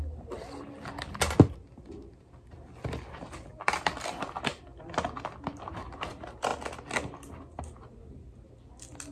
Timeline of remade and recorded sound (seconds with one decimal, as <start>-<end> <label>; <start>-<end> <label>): 0.0-9.1 recorded